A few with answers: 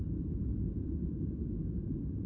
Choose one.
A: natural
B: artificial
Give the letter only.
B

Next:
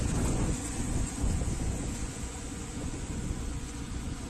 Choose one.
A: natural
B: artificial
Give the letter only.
B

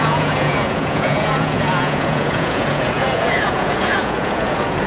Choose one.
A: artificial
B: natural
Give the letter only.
A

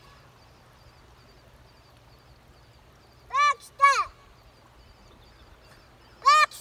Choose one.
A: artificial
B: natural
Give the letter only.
B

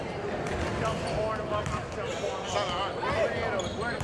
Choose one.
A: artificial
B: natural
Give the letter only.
B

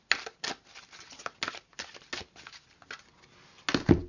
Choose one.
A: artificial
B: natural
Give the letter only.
B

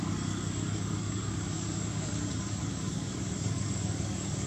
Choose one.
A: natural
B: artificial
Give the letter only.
B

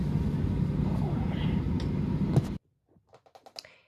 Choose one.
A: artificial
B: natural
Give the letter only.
B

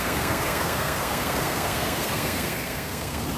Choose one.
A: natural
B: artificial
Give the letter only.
B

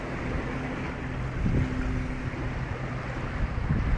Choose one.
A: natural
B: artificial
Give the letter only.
A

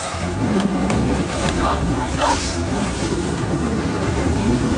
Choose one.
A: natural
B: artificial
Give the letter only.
B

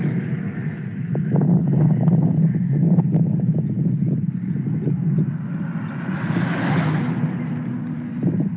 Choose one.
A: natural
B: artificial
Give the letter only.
A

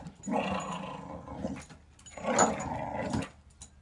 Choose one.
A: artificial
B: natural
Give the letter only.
B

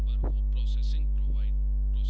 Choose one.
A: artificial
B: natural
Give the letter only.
B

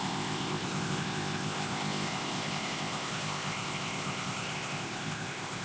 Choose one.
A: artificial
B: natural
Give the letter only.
A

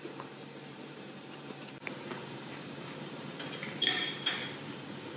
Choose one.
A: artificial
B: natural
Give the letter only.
A